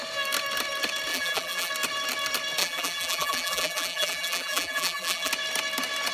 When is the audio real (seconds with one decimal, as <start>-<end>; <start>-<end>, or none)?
0.0-1.1; 1.7-2.6; 5.3-6.1